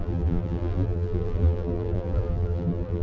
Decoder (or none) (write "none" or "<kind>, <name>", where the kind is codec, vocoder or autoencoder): vocoder, BigVGAN v2